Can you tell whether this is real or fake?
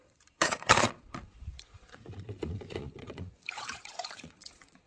fake